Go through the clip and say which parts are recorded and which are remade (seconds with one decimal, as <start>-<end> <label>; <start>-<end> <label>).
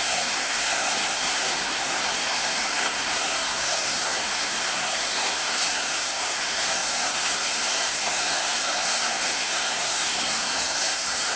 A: 0.0-11.4 remade